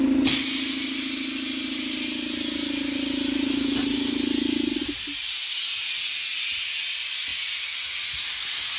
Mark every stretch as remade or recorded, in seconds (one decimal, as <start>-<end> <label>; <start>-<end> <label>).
0.0-8.8 recorded